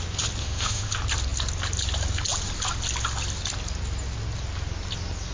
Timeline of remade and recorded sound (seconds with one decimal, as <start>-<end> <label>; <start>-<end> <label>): 0.0-0.4 recorded; 0.4-0.9 remade; 0.9-5.3 recorded